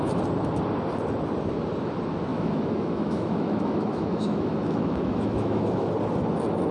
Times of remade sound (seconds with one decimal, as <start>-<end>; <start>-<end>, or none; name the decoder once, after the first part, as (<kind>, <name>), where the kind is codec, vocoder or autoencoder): 2.3-5.9 (autoencoder, DAC-VAE)

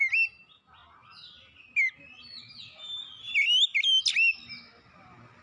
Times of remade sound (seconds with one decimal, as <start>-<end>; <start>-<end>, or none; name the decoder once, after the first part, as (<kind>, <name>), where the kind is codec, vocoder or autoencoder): none

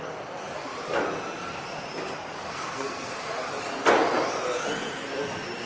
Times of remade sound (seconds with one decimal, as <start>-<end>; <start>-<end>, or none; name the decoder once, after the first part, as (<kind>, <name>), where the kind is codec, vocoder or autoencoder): 2.4-3.2 (codec, SNAC)

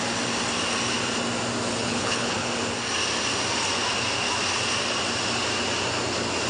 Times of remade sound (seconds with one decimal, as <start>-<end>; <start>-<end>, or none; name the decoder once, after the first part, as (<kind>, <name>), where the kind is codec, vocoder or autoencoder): 1.8-2.5 (codec, HILCodec)

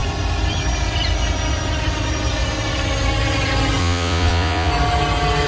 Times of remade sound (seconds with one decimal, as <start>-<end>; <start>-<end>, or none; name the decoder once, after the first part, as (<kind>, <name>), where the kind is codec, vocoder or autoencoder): 3.8-4.7 (vocoder, Vocos)

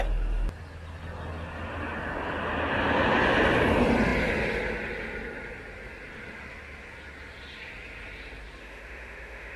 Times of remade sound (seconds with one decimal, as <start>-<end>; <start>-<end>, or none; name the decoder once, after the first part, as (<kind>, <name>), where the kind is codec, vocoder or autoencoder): 8.6-9.6 (autoencoder, DAC-VAE)

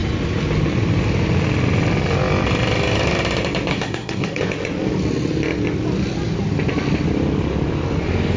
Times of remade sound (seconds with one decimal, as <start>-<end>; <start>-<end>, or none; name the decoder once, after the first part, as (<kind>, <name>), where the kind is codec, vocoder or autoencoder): 3.7-4.4 (codec, SNAC)